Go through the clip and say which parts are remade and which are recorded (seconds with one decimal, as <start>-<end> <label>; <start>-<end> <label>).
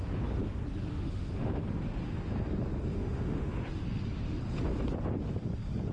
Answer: 0.0-0.9 recorded; 0.9-1.6 remade; 1.6-2.9 recorded; 2.9-3.5 remade; 3.5-5.9 recorded